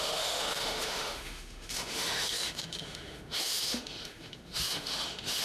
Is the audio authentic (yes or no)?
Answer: no